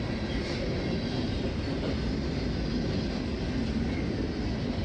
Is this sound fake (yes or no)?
no